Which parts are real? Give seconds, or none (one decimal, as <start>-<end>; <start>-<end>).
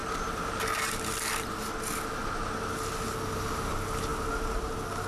0.0-5.1